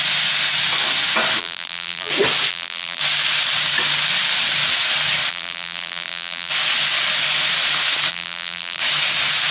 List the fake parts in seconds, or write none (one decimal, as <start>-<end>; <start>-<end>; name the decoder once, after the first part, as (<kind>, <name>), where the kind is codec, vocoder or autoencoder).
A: 1.4-2.1 (vocoder, BigVGAN v2); 2.5-3.0; 5.3-6.5; 8.1-8.8